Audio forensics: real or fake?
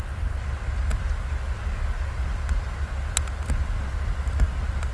real